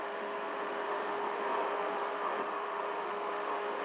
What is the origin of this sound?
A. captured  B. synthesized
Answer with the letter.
B